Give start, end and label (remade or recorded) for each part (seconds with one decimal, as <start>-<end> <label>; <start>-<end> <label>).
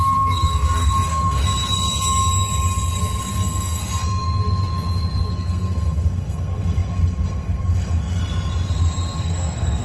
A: 0.0-1.4 remade; 1.4-3.3 recorded; 3.3-3.9 remade; 3.9-5.3 recorded; 5.3-8.2 remade; 8.2-9.2 recorded; 9.2-9.8 remade